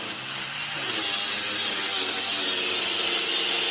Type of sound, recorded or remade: recorded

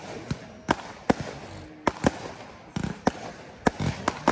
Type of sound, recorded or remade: recorded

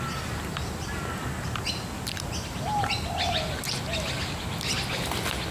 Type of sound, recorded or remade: recorded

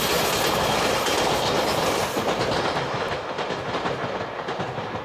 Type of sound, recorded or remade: recorded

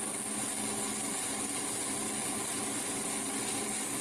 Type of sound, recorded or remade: recorded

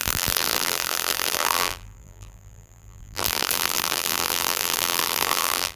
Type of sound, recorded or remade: remade